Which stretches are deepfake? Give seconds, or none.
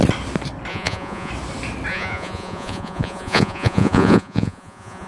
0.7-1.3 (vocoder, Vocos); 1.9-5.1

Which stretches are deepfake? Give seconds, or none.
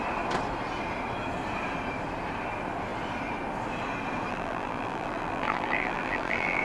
4.3-6.6 (vocoder, BigVGAN v2)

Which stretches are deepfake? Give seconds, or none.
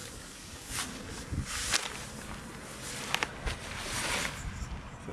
0.0-1.6 (codec, DAC)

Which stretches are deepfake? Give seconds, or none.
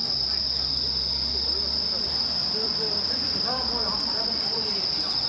2.4-4.8 (vocoder, BigVGAN v2)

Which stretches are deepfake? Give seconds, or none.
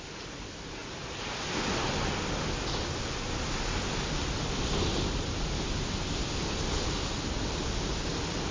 none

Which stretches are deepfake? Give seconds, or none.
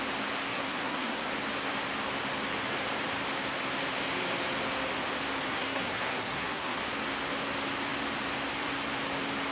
0.5-1.3 (codec, SNAC); 5.5-6.8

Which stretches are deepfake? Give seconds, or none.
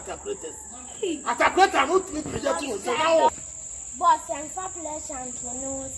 none